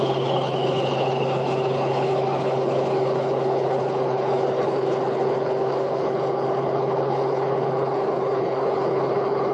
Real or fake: fake